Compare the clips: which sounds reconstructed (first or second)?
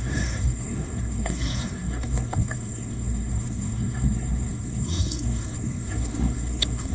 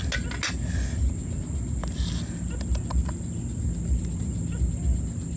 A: first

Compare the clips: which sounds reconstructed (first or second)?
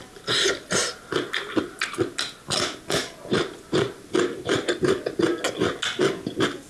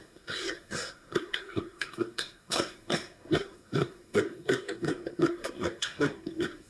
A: second